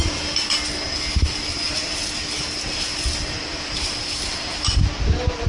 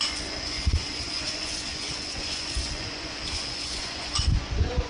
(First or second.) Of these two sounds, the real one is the first